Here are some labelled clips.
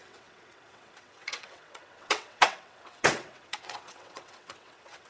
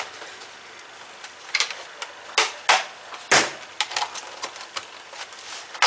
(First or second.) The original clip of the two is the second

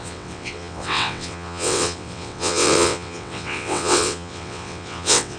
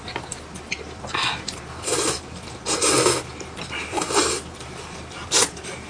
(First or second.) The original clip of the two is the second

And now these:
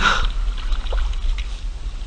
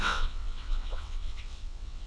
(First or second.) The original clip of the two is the first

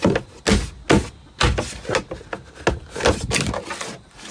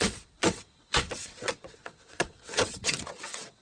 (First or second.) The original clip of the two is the first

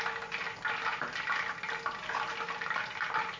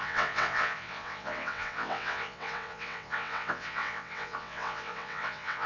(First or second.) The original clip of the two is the first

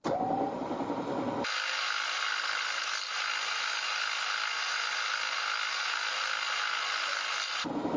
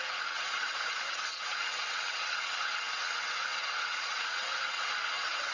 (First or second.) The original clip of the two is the first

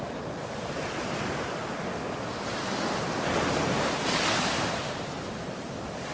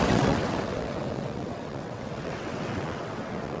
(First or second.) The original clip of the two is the first